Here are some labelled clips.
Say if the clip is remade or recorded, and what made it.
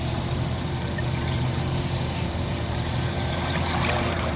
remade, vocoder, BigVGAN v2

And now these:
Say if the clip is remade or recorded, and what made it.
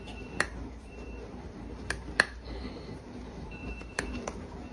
remade, vocoder, BigVGAN v2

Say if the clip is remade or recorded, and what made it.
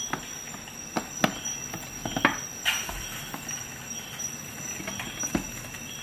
recorded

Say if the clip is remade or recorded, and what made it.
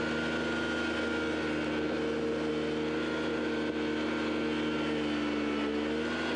recorded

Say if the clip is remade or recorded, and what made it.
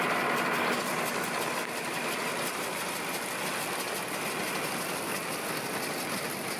recorded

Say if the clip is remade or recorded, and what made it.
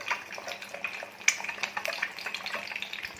recorded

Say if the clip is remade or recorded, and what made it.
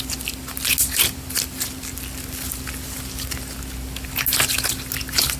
recorded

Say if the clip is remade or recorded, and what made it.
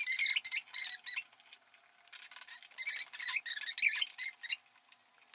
recorded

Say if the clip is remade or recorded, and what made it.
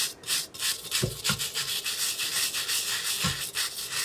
recorded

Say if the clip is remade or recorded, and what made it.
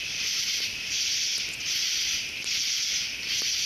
remade, vocoder, BigVGAN v2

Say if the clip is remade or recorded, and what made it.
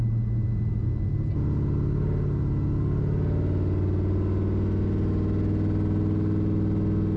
recorded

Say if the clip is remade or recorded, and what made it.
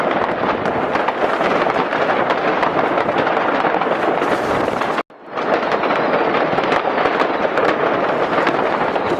recorded